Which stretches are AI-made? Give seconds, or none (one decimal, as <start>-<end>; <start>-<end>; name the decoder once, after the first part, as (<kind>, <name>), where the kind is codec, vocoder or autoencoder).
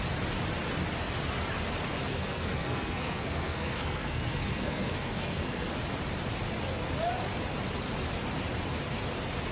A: 2.1-5.7 (codec, SNAC)